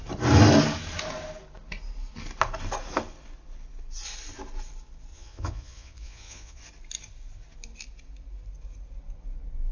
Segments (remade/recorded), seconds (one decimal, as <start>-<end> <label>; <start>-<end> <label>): 0.0-5.1 recorded; 5.1-6.6 remade; 6.6-9.7 recorded